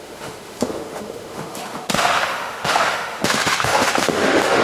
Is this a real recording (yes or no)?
no